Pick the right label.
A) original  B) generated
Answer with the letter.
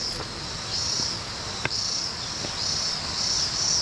A